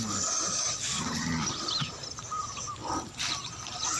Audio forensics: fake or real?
real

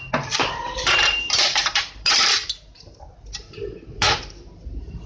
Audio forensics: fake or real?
fake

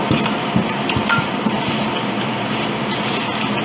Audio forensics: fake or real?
fake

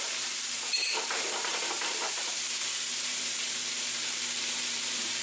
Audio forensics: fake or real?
fake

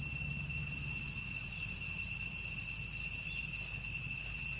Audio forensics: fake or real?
real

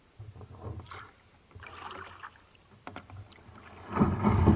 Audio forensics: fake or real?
real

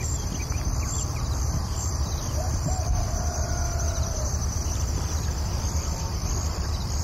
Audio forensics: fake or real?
fake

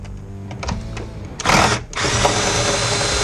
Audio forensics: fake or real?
real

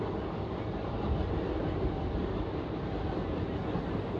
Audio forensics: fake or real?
real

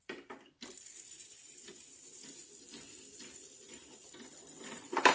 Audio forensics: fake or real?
fake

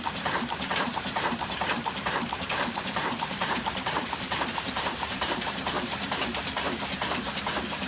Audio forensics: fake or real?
fake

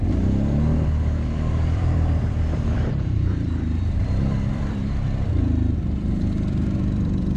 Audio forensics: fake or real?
fake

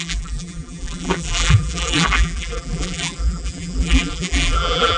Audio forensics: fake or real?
fake